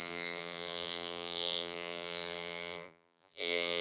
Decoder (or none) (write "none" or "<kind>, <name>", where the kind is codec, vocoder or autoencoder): vocoder, BigVGAN v2